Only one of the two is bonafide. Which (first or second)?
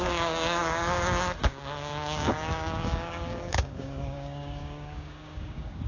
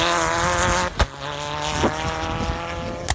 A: second